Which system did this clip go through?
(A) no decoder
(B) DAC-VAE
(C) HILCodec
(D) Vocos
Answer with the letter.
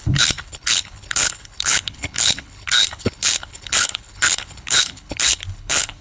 C